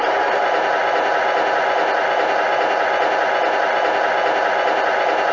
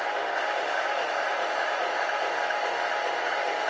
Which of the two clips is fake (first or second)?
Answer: second